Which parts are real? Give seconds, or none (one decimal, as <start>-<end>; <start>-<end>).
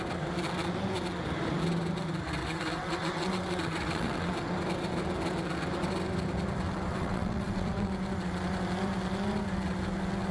0.0-2.4; 4.3-6.9; 7.9-10.3